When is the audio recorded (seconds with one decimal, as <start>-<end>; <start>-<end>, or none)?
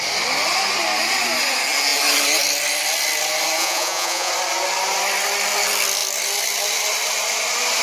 0.0-3.6; 4.3-7.8